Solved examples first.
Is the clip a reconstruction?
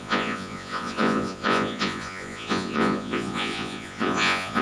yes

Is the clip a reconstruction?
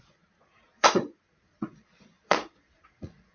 yes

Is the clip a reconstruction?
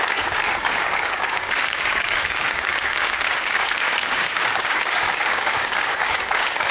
yes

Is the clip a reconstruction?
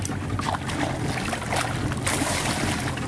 no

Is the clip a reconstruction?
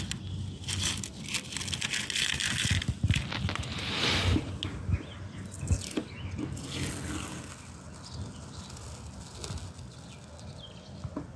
no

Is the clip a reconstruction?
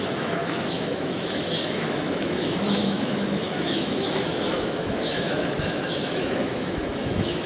yes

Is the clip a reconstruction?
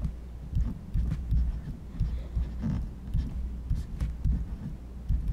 no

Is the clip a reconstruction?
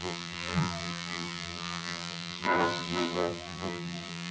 yes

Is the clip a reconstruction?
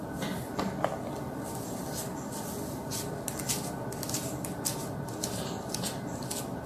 no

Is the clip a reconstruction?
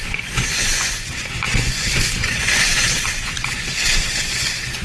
yes